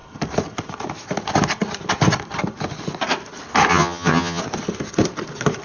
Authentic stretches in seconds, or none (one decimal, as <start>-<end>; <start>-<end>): 0.0-3.7; 4.4-5.6